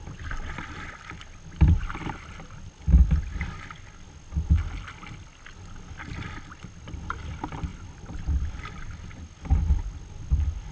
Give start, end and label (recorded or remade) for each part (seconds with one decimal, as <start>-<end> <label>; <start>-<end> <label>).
0.0-10.7 recorded